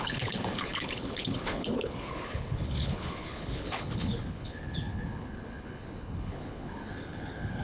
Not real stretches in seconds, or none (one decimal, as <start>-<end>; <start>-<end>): 0.0-7.6